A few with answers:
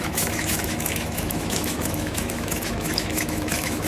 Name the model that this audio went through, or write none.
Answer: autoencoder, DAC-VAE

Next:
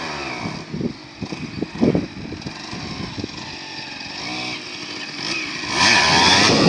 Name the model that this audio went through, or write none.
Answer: none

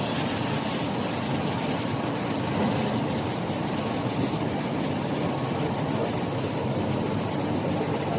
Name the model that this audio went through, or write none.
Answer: none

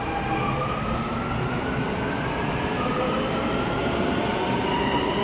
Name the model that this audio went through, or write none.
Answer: none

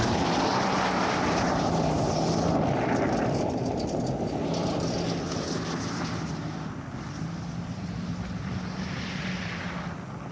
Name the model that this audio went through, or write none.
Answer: none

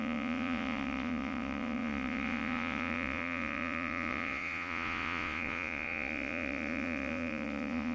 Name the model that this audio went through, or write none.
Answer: vocoder, Vocos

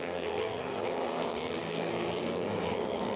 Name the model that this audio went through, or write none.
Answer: codec, SNAC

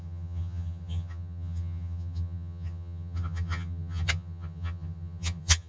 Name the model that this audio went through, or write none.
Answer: vocoder, HiFi-GAN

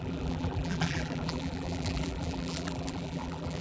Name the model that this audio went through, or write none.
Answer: vocoder, BigVGAN v2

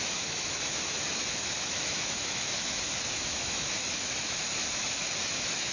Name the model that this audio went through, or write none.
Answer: autoencoder, DAC-VAE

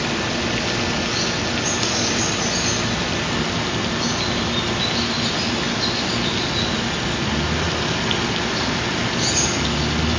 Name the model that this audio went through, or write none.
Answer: none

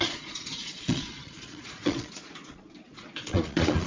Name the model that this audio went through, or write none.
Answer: vocoder, Vocos